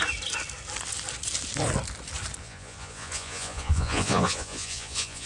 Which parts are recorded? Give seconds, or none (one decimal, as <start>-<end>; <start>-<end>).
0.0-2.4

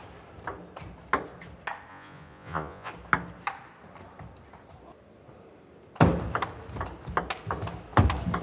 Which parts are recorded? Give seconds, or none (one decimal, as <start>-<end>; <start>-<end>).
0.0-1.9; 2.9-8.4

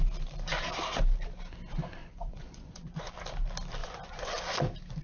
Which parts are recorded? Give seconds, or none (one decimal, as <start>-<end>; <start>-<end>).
0.0-2.0; 3.1-3.8; 4.4-5.0

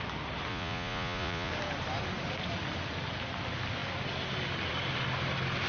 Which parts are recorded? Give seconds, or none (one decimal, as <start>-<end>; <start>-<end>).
0.0-0.5; 1.5-5.7

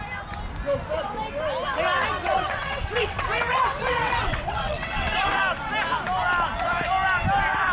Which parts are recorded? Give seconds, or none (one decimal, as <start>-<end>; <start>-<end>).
0.0-2.2; 5.4-7.7